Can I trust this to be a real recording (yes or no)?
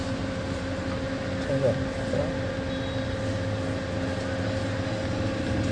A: yes